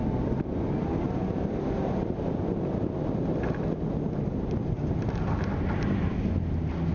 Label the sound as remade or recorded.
recorded